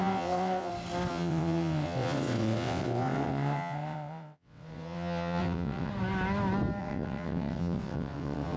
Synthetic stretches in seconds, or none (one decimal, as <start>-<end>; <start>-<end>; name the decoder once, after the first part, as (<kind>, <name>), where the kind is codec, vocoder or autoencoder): 0.0-0.7 (vocoder, WaveNeXt); 1.1-5.9; 6.8-8.6